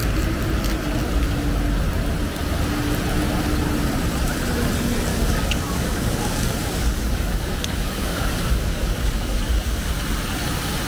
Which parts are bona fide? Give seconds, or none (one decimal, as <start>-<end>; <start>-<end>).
0.0-5.1; 9.9-10.9